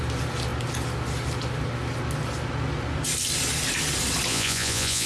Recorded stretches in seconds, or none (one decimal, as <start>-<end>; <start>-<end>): 0.0-4.3